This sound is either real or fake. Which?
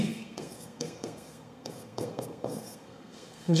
fake